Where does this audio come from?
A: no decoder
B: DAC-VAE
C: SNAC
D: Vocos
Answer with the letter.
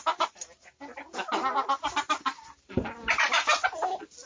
A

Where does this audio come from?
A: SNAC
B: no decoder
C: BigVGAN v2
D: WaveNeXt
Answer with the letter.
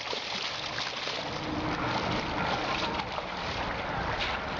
B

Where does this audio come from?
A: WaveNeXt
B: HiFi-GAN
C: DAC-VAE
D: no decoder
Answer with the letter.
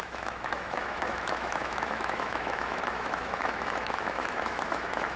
C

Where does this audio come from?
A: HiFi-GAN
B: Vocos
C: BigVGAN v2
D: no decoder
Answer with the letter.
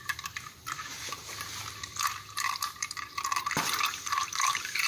C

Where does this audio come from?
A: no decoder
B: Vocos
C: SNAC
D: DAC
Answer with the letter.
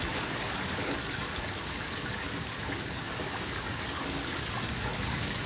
D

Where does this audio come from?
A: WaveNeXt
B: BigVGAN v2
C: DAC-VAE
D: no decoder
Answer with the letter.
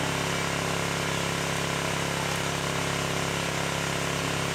D